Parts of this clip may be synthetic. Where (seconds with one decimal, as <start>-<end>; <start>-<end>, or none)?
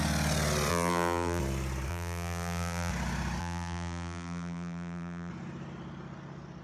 0.7-1.4; 1.9-2.9; 3.4-5.3